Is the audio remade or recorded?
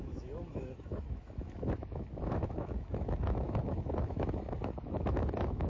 remade